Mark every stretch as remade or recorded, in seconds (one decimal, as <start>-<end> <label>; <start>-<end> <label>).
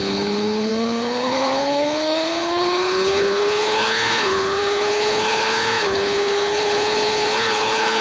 0.0-8.0 remade